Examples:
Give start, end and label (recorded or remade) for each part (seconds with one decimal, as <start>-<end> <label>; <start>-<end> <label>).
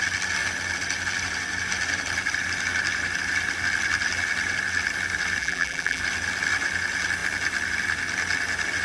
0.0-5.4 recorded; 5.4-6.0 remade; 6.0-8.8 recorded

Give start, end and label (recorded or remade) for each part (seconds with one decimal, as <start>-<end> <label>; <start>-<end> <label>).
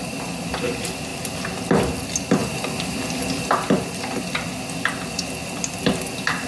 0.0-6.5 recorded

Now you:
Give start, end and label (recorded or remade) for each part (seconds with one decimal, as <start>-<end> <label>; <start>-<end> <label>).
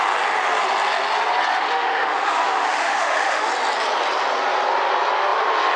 0.0-1.5 recorded; 1.5-3.5 remade; 3.5-5.8 recorded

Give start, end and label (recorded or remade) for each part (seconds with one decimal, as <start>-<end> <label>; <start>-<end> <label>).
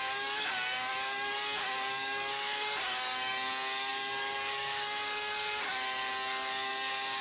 0.0-7.2 remade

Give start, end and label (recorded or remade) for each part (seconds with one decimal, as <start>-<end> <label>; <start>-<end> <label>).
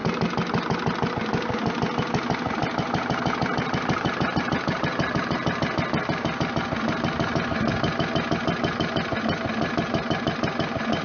0.0-11.0 recorded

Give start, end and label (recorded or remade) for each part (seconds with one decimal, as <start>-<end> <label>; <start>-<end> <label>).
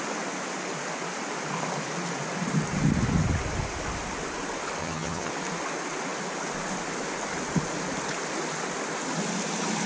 0.0-4.8 recorded; 4.8-5.3 remade; 5.3-9.9 recorded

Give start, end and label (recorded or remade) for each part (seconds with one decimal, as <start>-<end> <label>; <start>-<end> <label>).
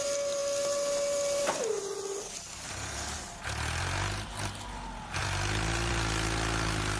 0.0-7.0 recorded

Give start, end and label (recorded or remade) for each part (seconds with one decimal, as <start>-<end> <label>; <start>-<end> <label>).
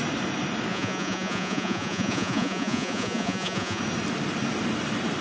0.0-0.7 recorded; 0.7-3.8 remade; 3.8-5.2 recorded